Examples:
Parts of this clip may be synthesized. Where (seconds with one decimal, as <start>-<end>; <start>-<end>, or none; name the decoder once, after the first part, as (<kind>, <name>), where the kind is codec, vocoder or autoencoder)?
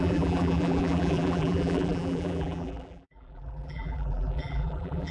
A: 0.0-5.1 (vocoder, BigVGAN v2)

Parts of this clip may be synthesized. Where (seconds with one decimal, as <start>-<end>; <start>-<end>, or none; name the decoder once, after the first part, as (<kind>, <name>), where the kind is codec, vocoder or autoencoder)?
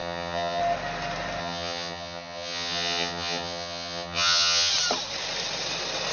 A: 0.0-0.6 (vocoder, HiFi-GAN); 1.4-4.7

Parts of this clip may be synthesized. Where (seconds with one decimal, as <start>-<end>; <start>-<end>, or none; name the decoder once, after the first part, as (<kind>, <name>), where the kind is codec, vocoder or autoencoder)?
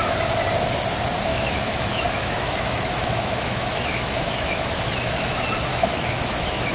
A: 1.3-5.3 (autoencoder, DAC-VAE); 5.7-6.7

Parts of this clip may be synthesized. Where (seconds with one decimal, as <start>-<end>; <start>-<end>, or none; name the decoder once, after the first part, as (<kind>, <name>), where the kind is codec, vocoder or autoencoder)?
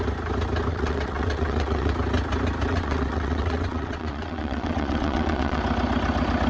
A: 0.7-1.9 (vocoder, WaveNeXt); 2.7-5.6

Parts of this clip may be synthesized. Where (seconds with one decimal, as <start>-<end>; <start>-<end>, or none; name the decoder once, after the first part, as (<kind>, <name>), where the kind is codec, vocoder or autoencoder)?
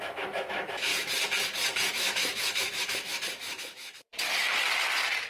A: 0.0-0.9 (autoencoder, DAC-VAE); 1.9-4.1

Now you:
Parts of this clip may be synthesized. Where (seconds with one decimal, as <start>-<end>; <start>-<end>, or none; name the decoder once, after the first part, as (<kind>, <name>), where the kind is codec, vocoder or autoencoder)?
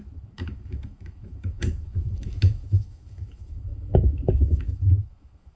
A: 0.0-5.6 (autoencoder, DAC-VAE)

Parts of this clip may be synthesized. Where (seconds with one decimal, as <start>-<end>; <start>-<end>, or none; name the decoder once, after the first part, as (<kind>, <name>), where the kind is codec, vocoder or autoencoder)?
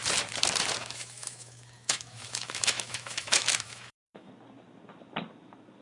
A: 0.8-4.3 (autoencoder, DAC-VAE)